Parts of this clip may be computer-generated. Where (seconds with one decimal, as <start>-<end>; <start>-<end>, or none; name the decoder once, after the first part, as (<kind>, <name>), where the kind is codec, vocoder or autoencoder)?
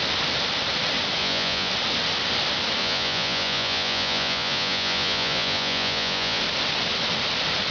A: 1.2-1.7 (vocoder, Vocos); 2.8-6.4